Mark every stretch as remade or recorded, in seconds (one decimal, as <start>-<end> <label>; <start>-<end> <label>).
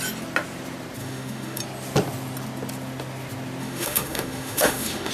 0.0-1.0 recorded; 1.0-1.6 remade; 1.6-3.6 recorded; 3.6-5.1 remade